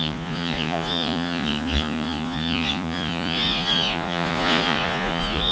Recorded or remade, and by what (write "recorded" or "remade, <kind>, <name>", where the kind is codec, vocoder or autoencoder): remade, vocoder, Vocos